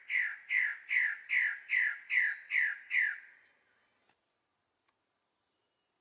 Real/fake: real